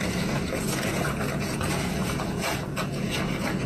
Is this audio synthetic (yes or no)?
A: yes